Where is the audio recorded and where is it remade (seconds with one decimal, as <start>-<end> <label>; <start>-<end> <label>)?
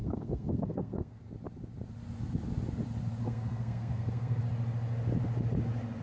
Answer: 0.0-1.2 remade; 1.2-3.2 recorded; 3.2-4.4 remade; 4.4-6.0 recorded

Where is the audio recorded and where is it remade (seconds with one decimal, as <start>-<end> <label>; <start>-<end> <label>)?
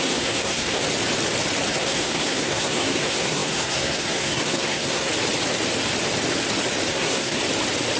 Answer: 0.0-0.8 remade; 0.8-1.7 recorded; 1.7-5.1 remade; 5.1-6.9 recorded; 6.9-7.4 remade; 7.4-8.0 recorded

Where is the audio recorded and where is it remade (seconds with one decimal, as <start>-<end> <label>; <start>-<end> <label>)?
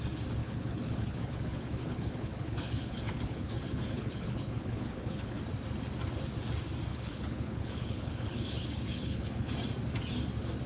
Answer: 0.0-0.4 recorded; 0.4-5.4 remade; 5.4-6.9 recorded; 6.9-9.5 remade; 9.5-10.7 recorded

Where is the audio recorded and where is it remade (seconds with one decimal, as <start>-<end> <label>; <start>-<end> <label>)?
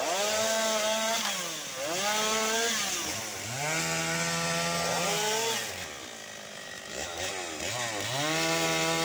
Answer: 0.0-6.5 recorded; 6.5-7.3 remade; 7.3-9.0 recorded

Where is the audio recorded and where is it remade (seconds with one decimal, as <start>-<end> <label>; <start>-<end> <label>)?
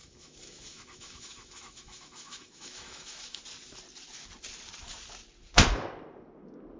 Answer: 0.0-3.4 remade; 3.4-6.8 recorded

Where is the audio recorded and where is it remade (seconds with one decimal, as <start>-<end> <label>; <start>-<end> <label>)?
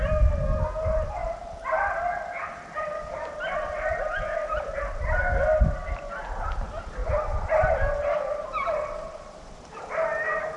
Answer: 0.0-7.0 recorded; 7.0-9.8 remade; 9.8-10.6 recorded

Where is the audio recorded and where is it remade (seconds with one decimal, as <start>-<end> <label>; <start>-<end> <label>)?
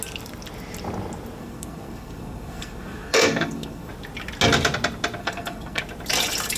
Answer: 0.0-1.4 recorded; 1.4-3.9 remade; 3.9-5.2 recorded; 5.2-5.8 remade; 5.8-6.6 recorded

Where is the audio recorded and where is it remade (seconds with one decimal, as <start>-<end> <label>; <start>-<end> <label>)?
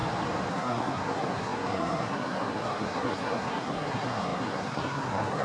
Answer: 0.0-0.5 recorded; 0.5-5.4 remade